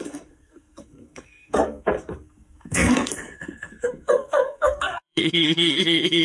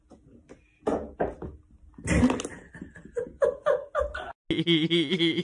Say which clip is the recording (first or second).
second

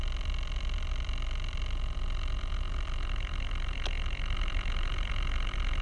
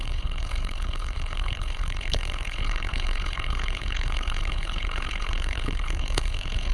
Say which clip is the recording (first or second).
first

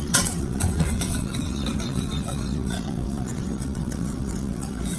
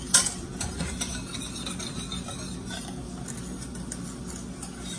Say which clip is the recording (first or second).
second